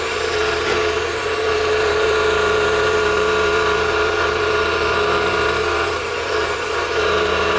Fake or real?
fake